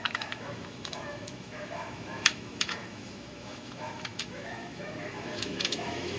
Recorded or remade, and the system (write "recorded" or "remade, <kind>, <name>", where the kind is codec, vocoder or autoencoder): remade, autoencoder, DAC-VAE